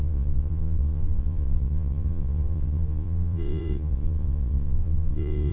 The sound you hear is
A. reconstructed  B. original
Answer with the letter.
A